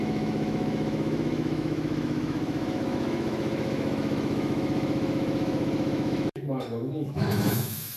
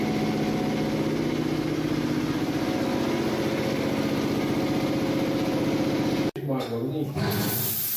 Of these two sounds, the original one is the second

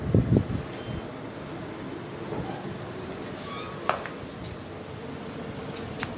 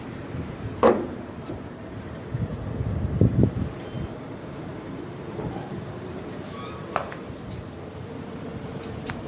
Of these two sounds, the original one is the first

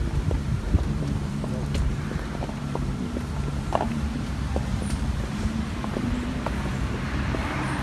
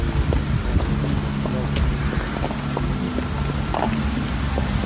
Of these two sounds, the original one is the second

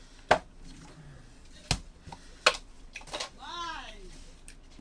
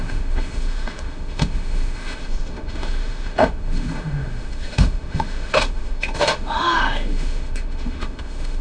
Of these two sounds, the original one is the first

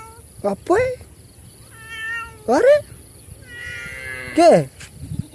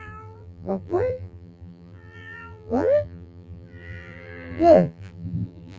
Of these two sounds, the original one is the first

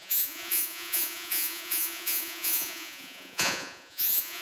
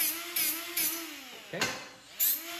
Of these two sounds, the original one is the second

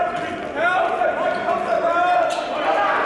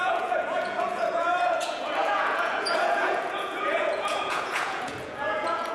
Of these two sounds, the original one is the first